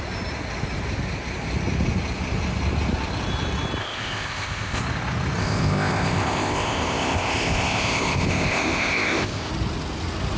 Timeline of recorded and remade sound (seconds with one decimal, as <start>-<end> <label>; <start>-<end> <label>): 0.0-3.8 recorded; 3.8-4.8 remade; 4.8-5.4 recorded; 5.4-9.5 remade; 9.5-10.4 recorded